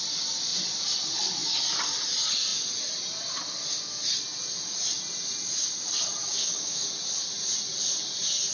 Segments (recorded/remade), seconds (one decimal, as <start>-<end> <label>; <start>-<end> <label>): 0.0-6.2 recorded; 6.2-6.9 remade; 6.9-8.5 recorded